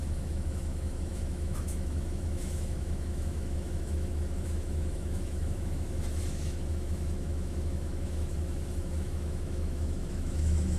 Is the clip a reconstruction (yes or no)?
yes